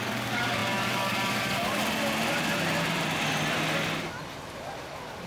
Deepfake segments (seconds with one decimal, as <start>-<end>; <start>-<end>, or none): 0.0-1.8